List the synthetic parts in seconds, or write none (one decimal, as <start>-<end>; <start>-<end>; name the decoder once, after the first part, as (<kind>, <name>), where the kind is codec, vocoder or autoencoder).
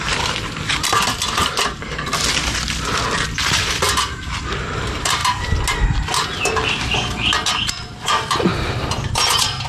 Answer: 0.0-5.2 (vocoder, BigVGAN v2); 7.7-8.5